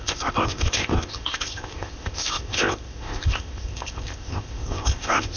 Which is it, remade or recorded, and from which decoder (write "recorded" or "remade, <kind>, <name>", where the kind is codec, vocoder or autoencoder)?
remade, codec, ZipCodec